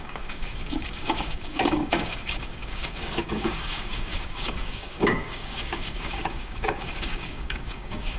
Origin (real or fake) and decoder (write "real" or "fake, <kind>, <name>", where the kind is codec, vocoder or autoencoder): fake, codec, DAC